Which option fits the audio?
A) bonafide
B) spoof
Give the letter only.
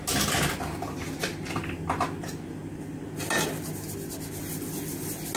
A